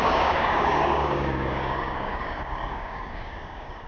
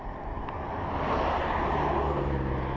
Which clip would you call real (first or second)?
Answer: second